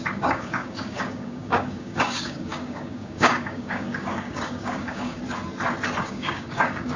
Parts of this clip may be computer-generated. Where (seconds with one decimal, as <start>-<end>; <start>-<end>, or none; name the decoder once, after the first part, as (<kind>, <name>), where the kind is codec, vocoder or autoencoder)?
0.0-5.2 (codec, DAC); 6.0-7.0